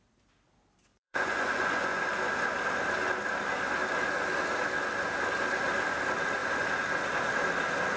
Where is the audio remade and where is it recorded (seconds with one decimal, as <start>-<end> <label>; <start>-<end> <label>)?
0.0-0.9 recorded; 0.9-2.0 remade; 2.0-8.0 recorded